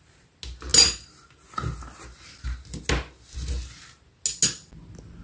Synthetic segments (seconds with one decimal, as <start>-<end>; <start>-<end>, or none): none